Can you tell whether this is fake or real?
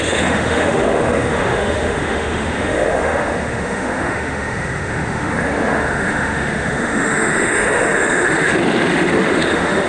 fake